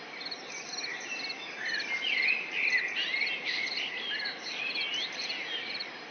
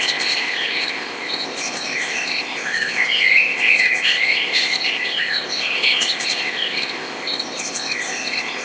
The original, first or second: first